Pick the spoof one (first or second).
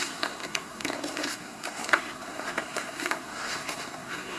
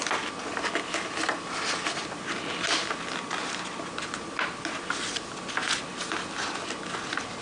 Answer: first